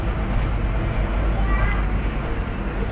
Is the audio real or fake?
real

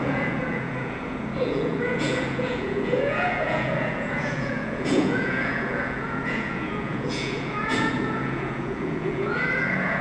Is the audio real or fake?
fake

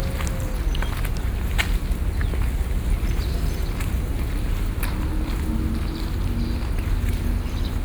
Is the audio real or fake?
real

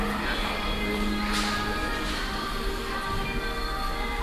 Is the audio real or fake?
real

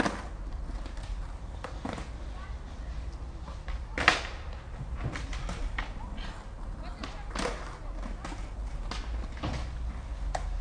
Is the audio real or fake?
real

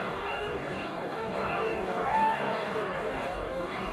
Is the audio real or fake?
fake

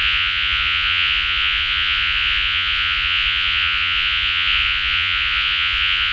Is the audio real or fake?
fake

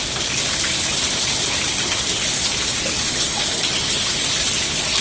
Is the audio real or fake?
real